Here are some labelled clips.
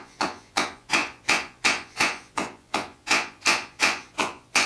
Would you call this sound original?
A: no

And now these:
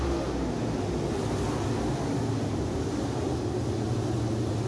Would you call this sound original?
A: yes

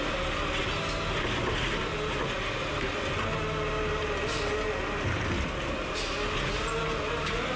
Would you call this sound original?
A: yes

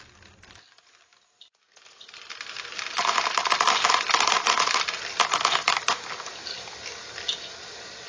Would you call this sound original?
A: yes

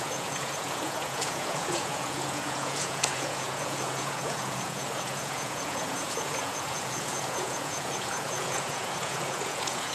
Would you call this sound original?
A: no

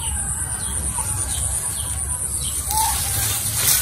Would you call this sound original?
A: yes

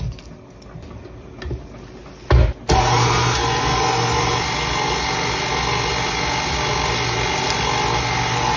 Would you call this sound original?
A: yes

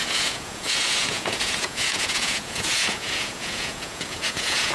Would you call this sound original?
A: no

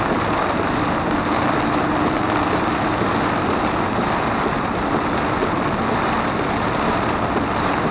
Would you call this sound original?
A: yes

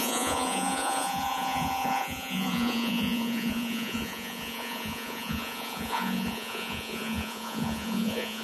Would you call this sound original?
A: no